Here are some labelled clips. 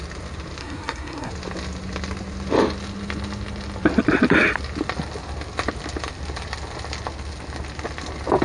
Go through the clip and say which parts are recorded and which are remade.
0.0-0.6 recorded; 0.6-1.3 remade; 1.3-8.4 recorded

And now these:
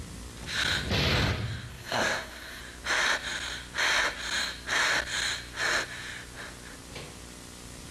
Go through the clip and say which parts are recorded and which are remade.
0.0-1.7 recorded; 1.7-2.6 remade; 2.6-7.9 recorded

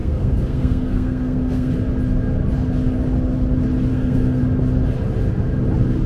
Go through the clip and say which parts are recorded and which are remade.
0.0-1.7 remade; 1.7-3.9 recorded; 3.9-4.4 remade; 4.4-6.1 recorded

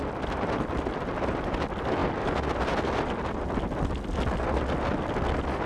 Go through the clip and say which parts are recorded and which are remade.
0.0-5.7 recorded

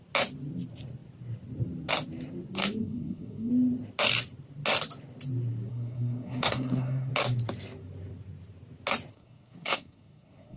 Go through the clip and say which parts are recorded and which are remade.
0.0-2.8 recorded; 2.8-3.5 remade; 3.5-5.7 recorded; 5.7-7.1 remade; 7.1-9.1 recorded; 9.1-10.6 remade

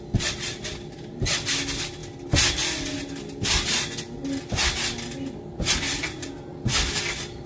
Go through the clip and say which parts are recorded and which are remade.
0.0-7.5 recorded

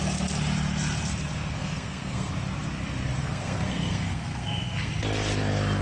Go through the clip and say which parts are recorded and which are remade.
0.0-1.6 recorded; 1.6-2.3 remade; 2.3-3.2 recorded; 3.2-4.9 remade; 4.9-5.8 recorded

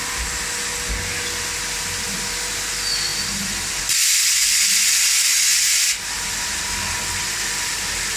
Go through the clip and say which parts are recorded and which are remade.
0.0-8.2 recorded